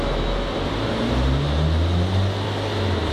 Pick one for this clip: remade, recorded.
recorded